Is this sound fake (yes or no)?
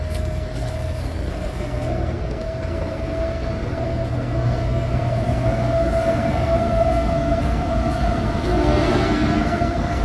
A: yes